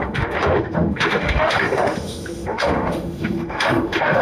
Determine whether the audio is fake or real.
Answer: fake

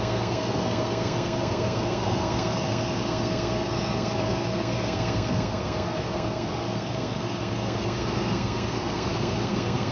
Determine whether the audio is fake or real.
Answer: fake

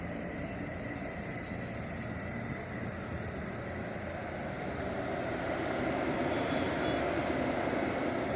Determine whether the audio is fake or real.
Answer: real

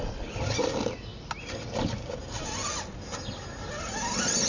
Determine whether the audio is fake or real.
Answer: real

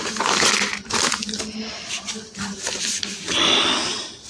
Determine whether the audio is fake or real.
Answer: real